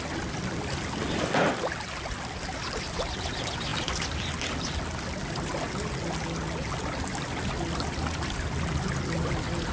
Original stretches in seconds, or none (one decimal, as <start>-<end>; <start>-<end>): 0.0-9.7